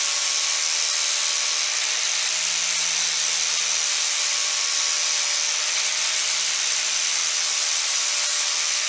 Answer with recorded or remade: recorded